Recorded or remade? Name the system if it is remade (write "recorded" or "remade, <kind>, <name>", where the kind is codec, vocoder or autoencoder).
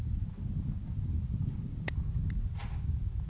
recorded